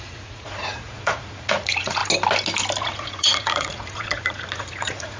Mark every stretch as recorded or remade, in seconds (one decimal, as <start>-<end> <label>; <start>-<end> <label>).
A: 0.0-2.0 remade; 2.0-2.8 recorded; 2.8-5.2 remade